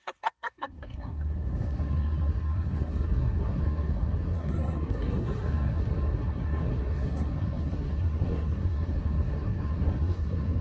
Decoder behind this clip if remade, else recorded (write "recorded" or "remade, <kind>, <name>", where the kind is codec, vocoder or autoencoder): remade, codec, SNAC